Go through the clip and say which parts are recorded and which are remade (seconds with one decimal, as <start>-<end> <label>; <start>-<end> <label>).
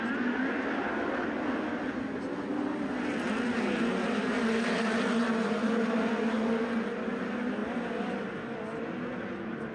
0.0-9.7 recorded